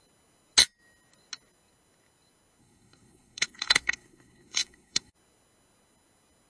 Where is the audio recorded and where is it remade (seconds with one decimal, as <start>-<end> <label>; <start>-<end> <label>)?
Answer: 0.0-2.6 recorded; 2.6-5.1 remade; 5.1-6.5 recorded